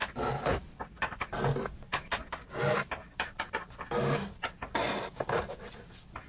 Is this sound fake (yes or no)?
no